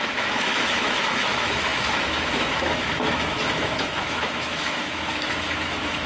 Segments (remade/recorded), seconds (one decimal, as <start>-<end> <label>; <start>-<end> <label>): 0.0-6.1 remade